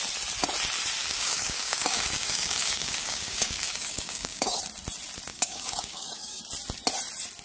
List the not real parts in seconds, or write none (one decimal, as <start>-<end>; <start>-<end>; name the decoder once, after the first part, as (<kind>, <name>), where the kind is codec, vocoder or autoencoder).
1.0-4.6 (codec, DAC); 5.3-6.4